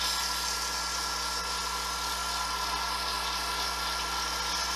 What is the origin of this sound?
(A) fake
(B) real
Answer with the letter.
B